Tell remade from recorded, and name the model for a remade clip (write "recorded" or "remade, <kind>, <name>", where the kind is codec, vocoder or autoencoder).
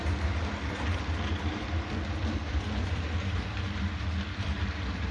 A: remade, vocoder, BigVGAN v2